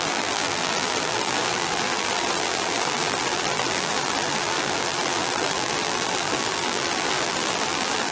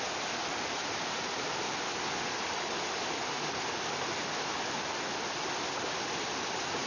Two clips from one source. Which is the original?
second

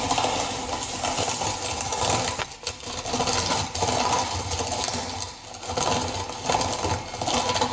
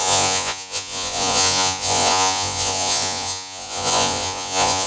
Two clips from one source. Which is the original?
first